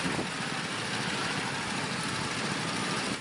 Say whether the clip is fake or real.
real